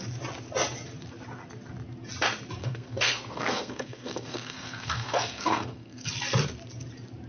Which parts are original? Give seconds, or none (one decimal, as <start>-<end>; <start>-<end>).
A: 0.0-2.6; 6.1-7.3